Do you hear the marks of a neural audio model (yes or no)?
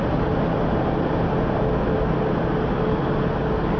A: no